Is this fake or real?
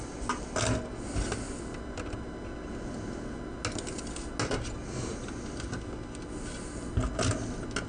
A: real